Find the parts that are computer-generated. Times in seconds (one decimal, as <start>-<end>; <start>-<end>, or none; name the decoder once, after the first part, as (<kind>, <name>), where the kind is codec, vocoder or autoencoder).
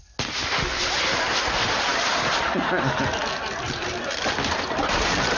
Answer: none